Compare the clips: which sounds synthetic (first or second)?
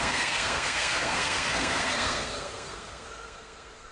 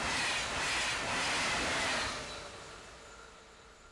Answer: first